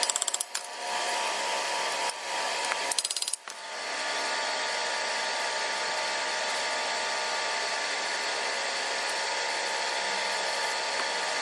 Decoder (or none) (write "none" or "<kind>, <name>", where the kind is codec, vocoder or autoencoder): none